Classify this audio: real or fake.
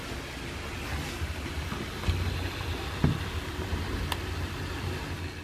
real